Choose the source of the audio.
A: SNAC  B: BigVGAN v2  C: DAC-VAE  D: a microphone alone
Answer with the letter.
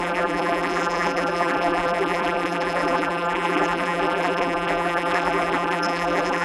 B